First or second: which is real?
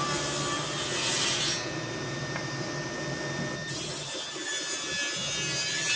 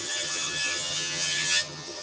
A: first